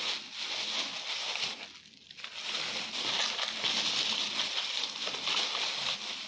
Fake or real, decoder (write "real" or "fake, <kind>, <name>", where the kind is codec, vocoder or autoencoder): real